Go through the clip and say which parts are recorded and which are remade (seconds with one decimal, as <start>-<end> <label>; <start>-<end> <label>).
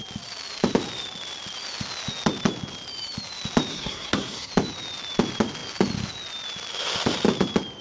0.0-3.7 recorded; 3.7-4.5 remade; 4.5-7.8 recorded